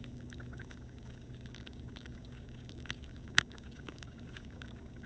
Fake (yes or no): yes